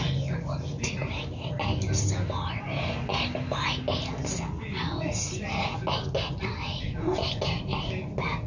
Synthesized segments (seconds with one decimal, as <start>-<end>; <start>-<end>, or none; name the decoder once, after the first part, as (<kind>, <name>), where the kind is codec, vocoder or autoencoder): none